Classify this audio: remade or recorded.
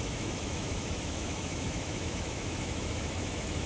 remade